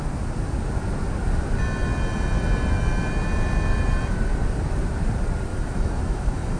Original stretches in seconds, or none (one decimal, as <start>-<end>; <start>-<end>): 0.0-5.5